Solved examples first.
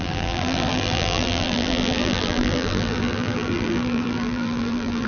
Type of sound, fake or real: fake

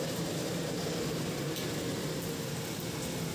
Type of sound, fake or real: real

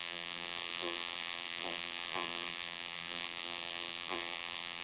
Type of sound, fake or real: fake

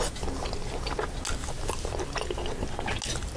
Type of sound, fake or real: real